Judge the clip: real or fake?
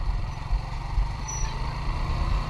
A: real